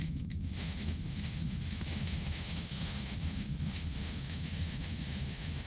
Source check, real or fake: fake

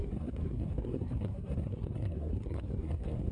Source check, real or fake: fake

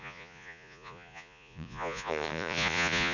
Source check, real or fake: fake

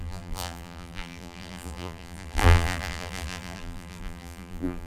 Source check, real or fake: fake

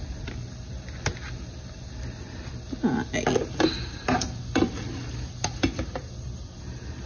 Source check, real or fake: real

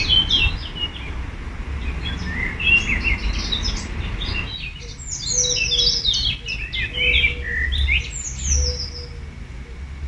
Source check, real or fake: real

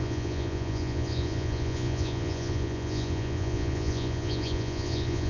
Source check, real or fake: fake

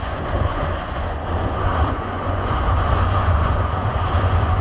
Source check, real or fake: fake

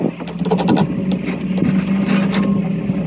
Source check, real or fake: real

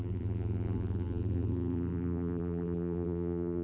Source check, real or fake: fake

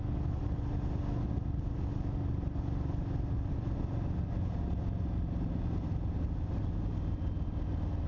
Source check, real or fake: real